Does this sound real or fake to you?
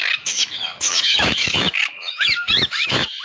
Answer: fake